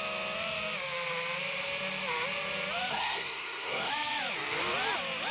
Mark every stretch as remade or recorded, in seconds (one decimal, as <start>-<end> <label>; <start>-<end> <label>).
0.0-2.9 recorded; 2.9-3.9 remade; 3.9-5.3 recorded